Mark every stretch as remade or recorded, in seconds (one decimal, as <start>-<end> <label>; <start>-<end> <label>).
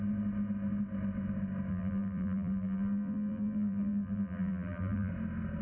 0.0-1.7 recorded; 1.7-5.1 remade; 5.1-5.6 recorded